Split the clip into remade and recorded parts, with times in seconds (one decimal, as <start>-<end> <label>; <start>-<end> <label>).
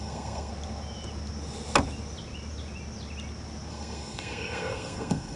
0.0-0.5 remade; 0.5-3.7 recorded; 3.7-5.4 remade